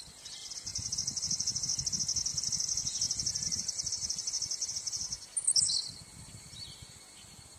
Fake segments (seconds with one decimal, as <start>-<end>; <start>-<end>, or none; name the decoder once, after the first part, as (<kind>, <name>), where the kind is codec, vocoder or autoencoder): 0.7-1.8 (vocoder, BigVGAN v2); 2.3-6.5